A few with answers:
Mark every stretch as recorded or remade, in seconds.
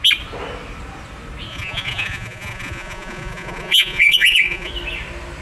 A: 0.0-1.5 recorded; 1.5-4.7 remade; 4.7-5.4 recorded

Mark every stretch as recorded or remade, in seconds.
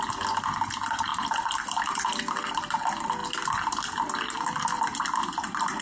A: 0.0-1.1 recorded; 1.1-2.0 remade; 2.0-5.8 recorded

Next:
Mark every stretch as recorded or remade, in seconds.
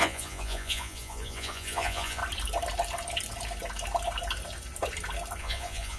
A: 0.0-2.2 remade; 2.2-5.4 recorded; 5.4-6.0 remade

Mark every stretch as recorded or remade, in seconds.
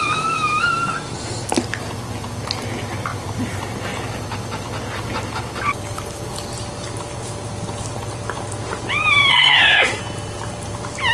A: 0.0-9.3 recorded; 9.3-10.0 remade; 10.0-11.1 recorded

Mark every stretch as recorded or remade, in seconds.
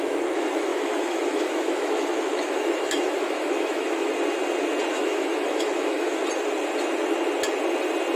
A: 0.0-4.1 remade; 4.1-4.9 recorded; 4.9-6.2 remade; 6.2-8.2 recorded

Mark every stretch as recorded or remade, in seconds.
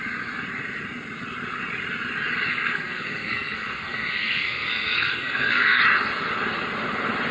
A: 0.0-2.5 recorded; 2.5-5.8 remade; 5.8-7.3 recorded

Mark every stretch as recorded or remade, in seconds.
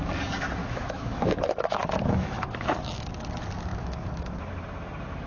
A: 0.0-0.6 recorded; 0.6-3.1 remade; 3.1-3.7 recorded; 3.7-4.5 remade; 4.5-5.3 recorded